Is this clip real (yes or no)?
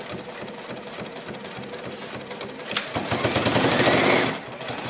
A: yes